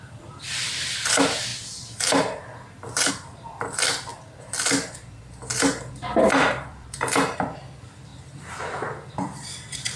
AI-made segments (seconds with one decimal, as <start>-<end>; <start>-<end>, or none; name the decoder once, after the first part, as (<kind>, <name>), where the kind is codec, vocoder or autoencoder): 0.0-1.5 (vocoder, BigVGAN v2); 3.1-4.1; 5.9-8.1; 9.1-10.0

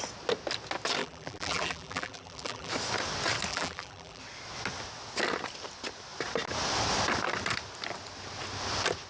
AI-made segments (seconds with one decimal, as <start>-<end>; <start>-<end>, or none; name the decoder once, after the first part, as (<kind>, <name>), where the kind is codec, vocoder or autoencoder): 1.0-2.7 (vocoder, BigVGAN v2); 3.5-4.2

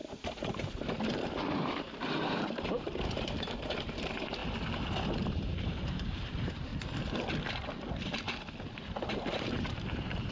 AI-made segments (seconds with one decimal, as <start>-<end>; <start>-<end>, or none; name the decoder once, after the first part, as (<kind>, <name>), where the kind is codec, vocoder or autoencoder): 0.0-4.4 (vocoder, BigVGAN v2); 5.1-6.7; 8.8-10.3

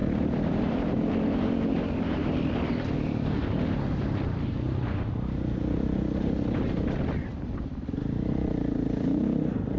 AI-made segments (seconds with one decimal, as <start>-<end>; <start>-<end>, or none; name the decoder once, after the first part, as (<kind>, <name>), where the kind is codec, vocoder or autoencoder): 0.0-2.2 (vocoder, BigVGAN v2); 7.3-9.8

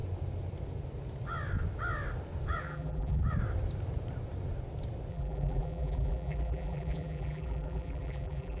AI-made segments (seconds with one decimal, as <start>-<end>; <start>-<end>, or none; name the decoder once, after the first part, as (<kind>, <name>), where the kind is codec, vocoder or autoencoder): 2.6-3.2 (vocoder, BigVGAN v2); 5.1-8.6

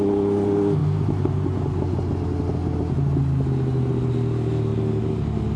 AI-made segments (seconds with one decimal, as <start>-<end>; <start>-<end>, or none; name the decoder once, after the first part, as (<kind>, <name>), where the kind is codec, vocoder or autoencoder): none